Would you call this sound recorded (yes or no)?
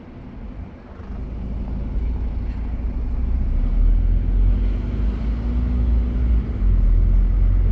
yes